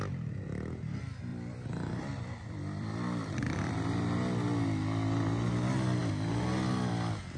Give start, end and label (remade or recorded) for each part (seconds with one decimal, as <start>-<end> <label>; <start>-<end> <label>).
0.0-1.3 recorded; 1.3-3.7 remade; 3.7-7.4 recorded